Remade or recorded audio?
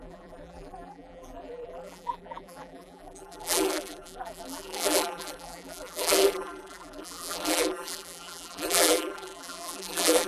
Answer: remade